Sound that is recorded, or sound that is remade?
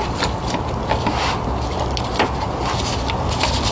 recorded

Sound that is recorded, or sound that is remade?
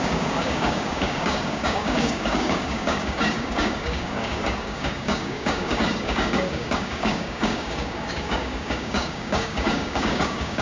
remade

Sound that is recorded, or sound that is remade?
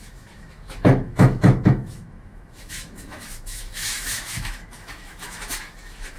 remade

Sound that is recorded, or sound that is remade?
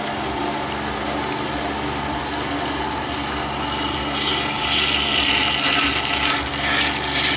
recorded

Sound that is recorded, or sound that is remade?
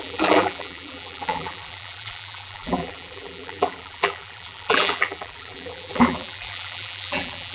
remade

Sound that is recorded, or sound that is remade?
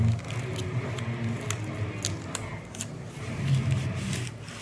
recorded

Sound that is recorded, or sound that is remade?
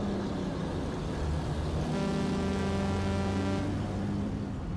recorded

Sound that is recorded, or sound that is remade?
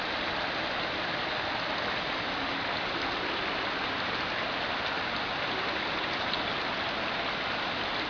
recorded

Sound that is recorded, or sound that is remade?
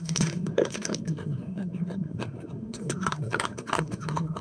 remade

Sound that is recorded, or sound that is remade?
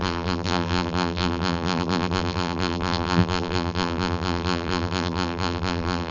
remade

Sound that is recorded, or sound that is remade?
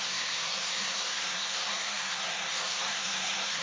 remade